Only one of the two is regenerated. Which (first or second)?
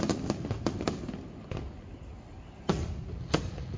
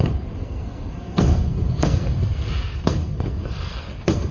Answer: second